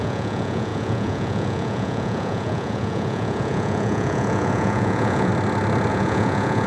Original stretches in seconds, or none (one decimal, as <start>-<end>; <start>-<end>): 5.3-5.9